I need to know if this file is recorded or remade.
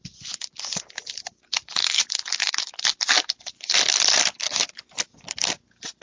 recorded